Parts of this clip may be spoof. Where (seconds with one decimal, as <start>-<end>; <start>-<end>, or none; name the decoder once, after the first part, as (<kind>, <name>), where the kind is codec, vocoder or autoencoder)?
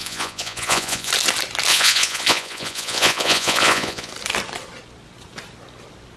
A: 0.0-1.1 (vocoder, Vocos); 1.7-4.1